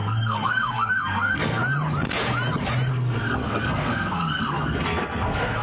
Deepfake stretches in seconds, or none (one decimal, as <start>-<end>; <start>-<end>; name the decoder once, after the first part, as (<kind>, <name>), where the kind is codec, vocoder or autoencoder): 0.0-1.6 (codec, SNAC); 2.9-5.6